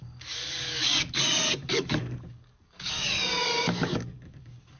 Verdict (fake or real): fake